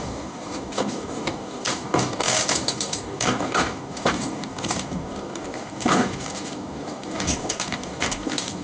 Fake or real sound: fake